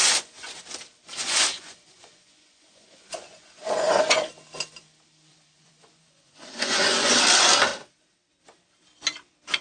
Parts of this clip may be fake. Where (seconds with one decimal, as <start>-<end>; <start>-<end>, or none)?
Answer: 0.0-0.6; 1.2-4.3; 5.3-7.1